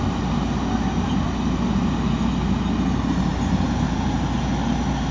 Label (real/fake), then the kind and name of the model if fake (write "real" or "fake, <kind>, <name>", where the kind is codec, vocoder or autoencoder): real